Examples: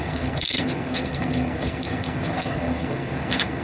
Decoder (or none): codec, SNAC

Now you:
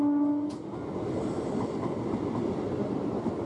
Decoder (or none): none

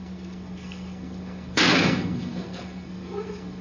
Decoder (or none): codec, SNAC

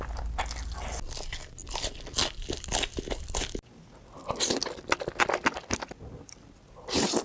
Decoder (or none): none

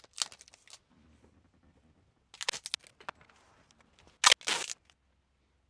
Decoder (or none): none